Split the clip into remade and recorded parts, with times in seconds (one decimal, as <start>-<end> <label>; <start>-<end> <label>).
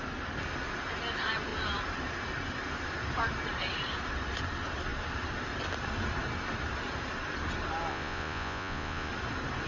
0.0-7.9 recorded; 7.9-9.1 remade; 9.1-9.7 recorded